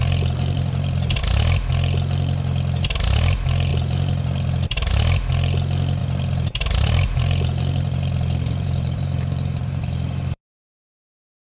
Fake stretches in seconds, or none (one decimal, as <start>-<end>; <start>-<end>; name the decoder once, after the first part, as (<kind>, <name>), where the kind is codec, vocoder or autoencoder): 0.0-1.2 (vocoder, BigVGAN v2); 3.7-4.9; 6.0-10.4

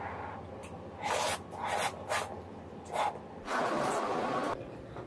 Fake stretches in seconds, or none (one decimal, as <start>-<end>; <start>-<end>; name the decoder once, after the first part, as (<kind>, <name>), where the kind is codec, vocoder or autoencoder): none

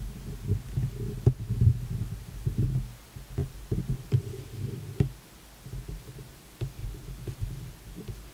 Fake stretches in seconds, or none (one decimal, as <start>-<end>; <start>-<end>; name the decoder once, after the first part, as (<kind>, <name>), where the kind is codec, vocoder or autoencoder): 3.4-4.2 (vocoder, BigVGAN v2); 6.8-8.3